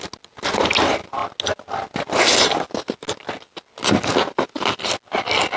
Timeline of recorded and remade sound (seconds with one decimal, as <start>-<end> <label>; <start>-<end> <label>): 0.0-5.6 recorded